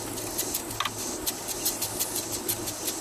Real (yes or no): yes